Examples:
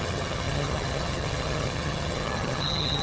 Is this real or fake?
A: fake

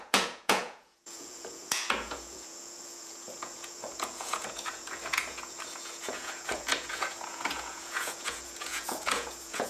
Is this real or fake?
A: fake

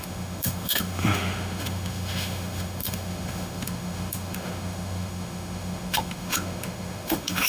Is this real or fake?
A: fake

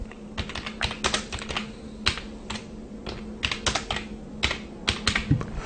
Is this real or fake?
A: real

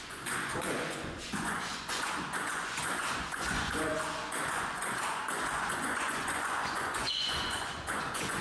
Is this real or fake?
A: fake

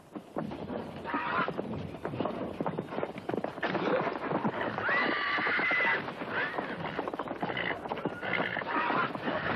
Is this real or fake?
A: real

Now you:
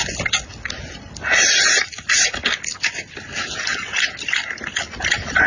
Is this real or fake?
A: real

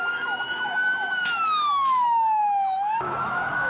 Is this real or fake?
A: fake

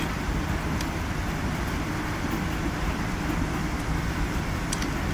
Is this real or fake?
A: real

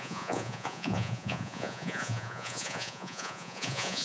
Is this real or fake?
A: fake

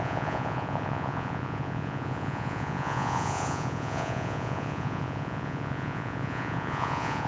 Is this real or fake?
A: fake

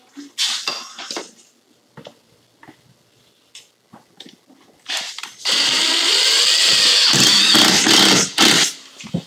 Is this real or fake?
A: real